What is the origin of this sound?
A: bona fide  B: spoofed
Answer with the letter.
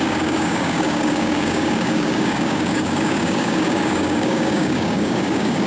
B